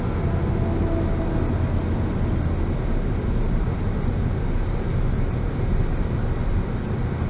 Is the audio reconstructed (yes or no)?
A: no